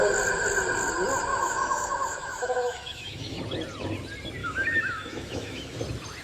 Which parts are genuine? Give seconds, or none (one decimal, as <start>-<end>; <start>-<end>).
0.0-1.3; 3.4-4.4; 5.8-6.2